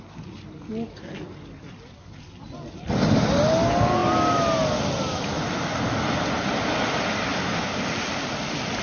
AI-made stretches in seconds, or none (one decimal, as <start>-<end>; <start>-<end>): none